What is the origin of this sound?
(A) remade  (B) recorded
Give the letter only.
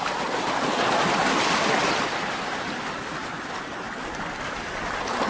B